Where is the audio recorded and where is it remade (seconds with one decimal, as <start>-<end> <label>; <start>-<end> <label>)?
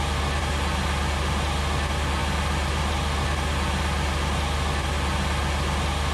0.0-6.1 recorded